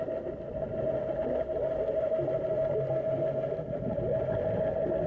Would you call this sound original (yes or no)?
yes